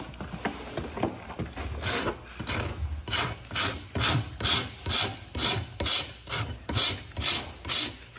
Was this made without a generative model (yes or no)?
yes